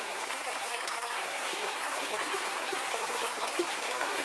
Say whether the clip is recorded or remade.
remade